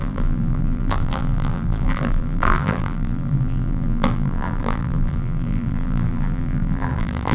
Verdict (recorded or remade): remade